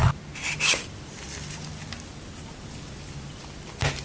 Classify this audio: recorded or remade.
recorded